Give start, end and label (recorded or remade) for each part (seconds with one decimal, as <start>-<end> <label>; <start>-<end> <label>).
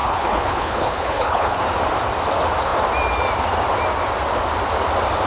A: 0.0-1.6 remade; 1.6-5.3 recorded